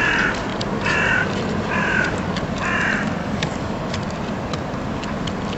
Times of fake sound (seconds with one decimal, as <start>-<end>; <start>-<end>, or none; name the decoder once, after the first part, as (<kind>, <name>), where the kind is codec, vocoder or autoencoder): 3.2-3.9 (codec, DAC)